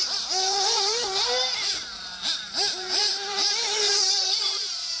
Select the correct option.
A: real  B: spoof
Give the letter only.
B